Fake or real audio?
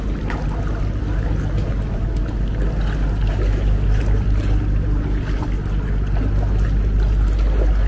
real